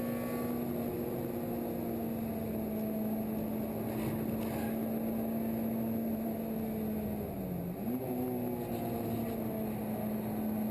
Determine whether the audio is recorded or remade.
recorded